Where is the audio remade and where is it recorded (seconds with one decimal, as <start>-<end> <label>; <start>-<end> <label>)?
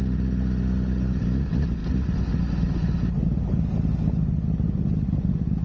0.0-5.6 recorded